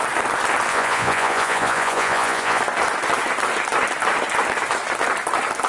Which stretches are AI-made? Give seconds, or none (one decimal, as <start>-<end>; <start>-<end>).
0.7-2.6